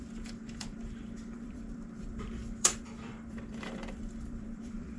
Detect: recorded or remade remade